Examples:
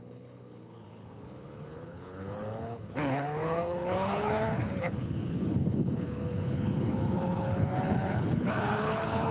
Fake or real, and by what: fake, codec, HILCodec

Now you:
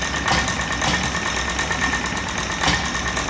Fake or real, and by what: real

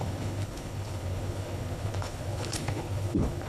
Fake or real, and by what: fake, codec, HILCodec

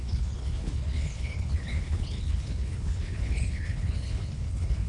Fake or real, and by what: fake, codec, HILCodec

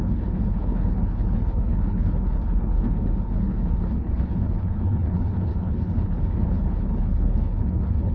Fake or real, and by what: fake, codec, HILCodec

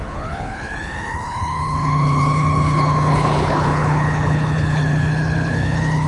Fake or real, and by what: fake, codec, HILCodec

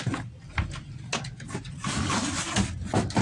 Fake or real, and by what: real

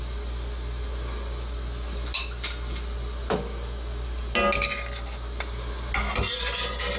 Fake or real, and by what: real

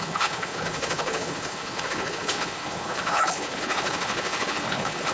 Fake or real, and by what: fake, codec, HILCodec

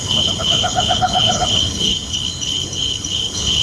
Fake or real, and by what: fake, codec, HILCodec